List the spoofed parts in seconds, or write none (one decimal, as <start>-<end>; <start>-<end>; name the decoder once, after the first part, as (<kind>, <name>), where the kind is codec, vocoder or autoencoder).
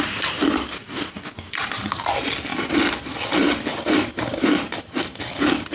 0.8-1.5 (codec, DAC)